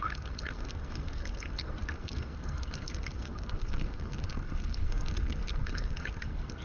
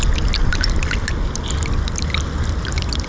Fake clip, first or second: first